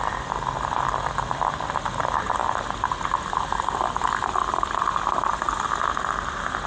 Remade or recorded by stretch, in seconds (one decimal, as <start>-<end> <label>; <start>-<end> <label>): 0.0-6.7 recorded